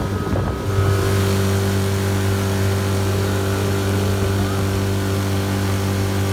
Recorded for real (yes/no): yes